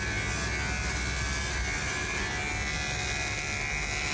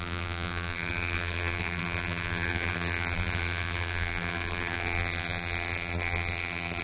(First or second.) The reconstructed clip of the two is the second